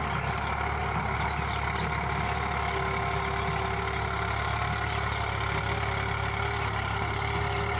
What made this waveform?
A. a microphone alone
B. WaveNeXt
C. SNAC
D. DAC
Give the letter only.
A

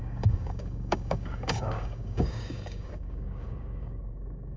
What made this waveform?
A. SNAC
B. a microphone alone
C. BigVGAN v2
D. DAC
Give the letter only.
D